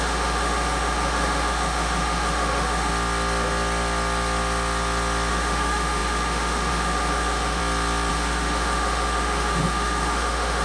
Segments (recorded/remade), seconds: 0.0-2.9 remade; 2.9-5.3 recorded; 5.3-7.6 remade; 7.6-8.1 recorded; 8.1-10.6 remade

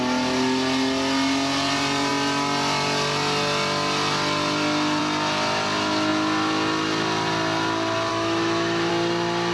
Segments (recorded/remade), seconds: 0.0-8.1 recorded; 8.1-8.9 remade; 8.9-9.5 recorded

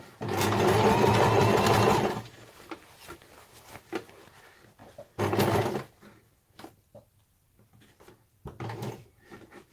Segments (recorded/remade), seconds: 0.0-9.7 recorded

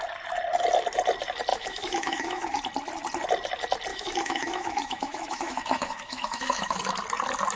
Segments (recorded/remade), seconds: 0.0-1.5 recorded; 1.5-2.6 remade; 2.6-3.9 recorded; 3.9-6.8 remade; 6.8-7.6 recorded

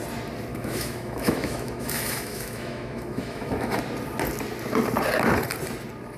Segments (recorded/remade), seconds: 0.0-0.5 recorded; 0.5-3.8 remade; 3.8-6.2 recorded

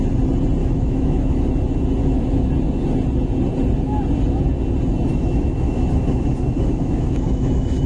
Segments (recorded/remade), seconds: 0.0-0.6 recorded; 0.6-1.6 remade; 1.6-2.0 recorded; 2.0-2.5 remade; 2.5-5.1 recorded; 5.1-7.9 remade

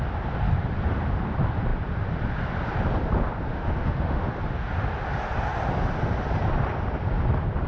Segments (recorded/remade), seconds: 0.0-3.5 recorded; 3.5-4.3 remade; 4.3-7.7 recorded

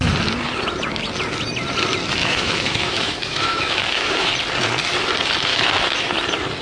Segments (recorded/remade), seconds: 0.0-2.2 recorded; 2.2-4.3 remade; 4.3-5.5 recorded; 5.5-6.1 remade; 6.1-6.6 recorded